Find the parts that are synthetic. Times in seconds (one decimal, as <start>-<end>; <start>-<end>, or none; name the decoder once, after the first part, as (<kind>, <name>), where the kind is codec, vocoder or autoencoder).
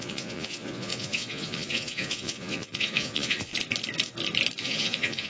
0.0-3.5 (vocoder, Vocos); 4.6-5.3